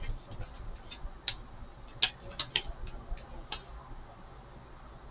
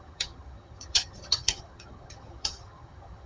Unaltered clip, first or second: first